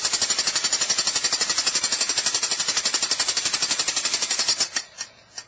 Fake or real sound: real